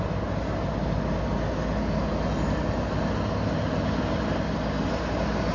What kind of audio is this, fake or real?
real